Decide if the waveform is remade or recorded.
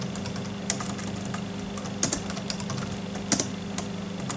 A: recorded